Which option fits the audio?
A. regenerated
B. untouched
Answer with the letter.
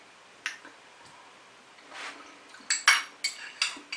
B